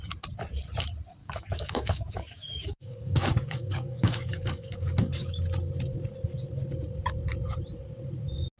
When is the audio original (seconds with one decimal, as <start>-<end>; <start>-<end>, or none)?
0.0-1.2; 5.4-8.6